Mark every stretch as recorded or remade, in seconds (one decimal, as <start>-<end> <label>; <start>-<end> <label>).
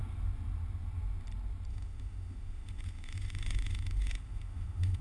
0.0-1.7 recorded; 1.7-5.0 remade